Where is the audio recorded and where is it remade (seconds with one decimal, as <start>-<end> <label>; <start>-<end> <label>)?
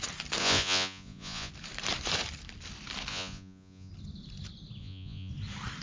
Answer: 0.0-0.4 recorded; 0.4-1.5 remade; 1.5-3.1 recorded; 3.1-3.9 remade; 3.9-4.8 recorded; 4.8-5.3 remade; 5.3-5.8 recorded